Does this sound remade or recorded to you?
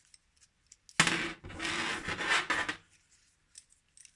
recorded